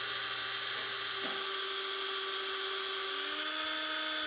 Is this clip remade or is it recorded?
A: recorded